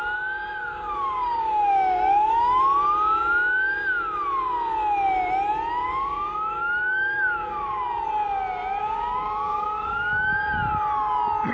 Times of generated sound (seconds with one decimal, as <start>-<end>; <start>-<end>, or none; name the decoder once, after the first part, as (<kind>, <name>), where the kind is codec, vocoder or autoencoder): 0.6-2.6 (codec, DAC); 5.8-7.8; 8.8-10.3